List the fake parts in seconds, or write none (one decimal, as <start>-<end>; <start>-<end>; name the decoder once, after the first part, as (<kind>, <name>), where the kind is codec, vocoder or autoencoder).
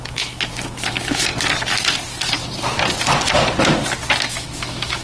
0.0-1.3 (autoencoder, DAC-VAE); 4.3-5.0